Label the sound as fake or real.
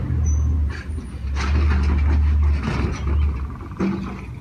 real